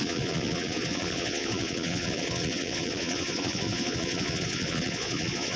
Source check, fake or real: fake